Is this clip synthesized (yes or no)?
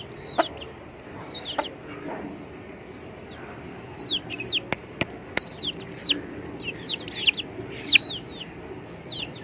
no